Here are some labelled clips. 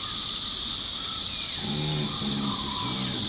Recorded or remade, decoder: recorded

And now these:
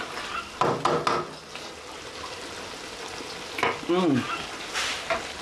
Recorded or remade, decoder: recorded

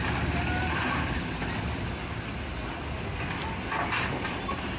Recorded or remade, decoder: recorded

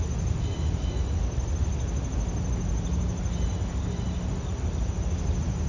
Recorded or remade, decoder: recorded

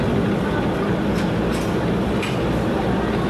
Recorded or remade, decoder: recorded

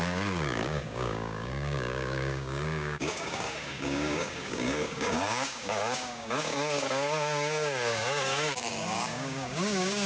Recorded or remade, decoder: remade, codec, DAC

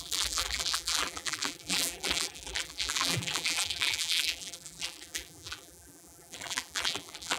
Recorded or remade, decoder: remade, vocoder, BigVGAN v2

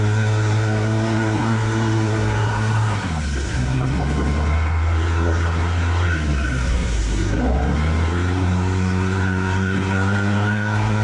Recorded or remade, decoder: remade, codec, SNAC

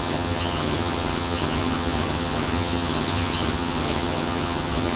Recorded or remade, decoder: remade, vocoder, HiFi-GAN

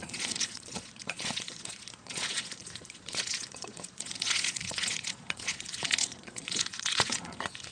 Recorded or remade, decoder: remade, vocoder, Vocos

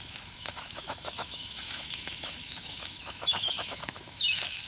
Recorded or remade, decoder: remade, autoencoder, DAC-VAE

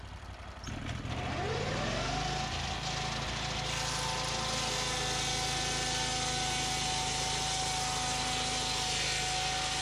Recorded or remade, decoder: recorded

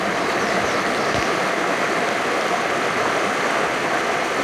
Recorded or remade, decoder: recorded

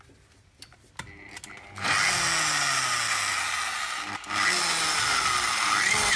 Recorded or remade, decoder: recorded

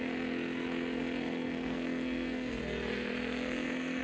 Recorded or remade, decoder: remade, codec, SNAC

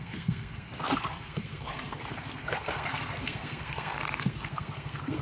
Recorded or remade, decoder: remade, codec, SNAC